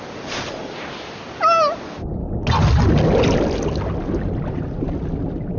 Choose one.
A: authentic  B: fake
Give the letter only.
A